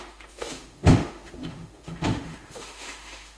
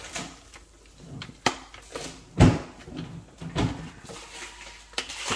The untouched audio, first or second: second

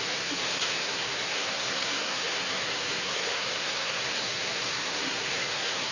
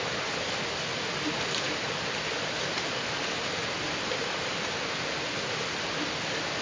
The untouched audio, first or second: second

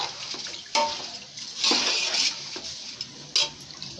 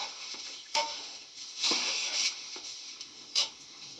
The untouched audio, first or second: first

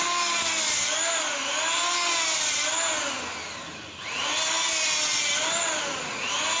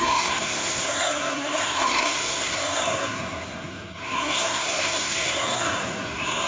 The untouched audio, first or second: first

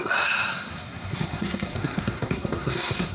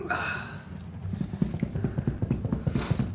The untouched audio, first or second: second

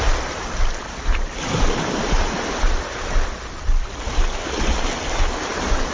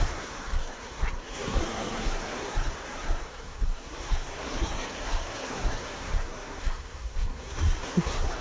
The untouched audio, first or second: first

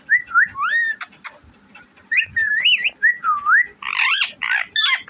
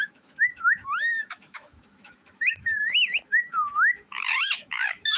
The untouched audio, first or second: first